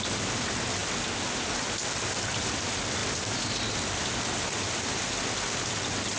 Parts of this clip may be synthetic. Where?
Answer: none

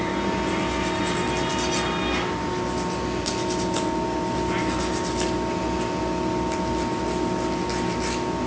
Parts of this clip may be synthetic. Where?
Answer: none